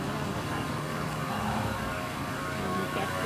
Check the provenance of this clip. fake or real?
fake